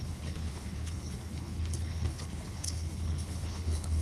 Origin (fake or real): fake